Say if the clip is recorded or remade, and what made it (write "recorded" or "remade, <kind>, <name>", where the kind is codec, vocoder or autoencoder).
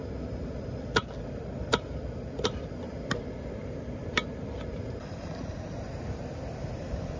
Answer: recorded